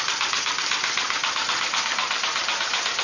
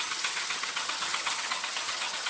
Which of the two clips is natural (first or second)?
first